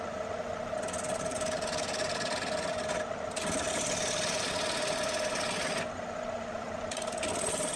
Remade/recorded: recorded